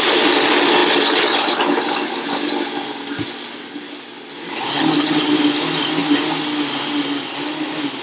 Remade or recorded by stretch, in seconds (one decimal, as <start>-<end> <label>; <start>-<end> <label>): 0.0-8.0 recorded